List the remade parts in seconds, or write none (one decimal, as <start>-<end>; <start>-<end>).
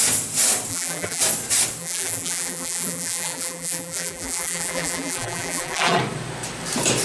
0.7-1.2; 1.8-6.0